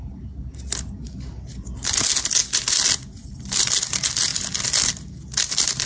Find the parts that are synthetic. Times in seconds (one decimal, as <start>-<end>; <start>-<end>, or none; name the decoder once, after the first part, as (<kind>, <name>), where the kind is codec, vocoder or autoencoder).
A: none